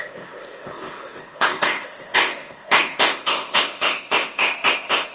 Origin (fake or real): fake